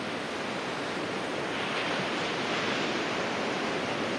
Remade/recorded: recorded